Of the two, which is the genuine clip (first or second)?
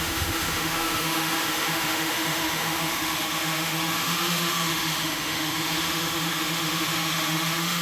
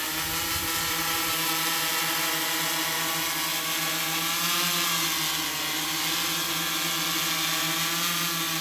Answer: second